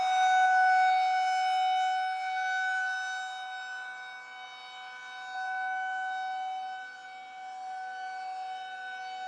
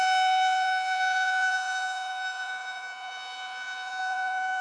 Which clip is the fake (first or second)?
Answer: second